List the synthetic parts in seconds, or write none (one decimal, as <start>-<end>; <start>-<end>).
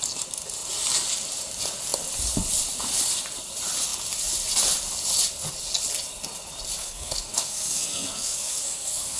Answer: 6.8-9.2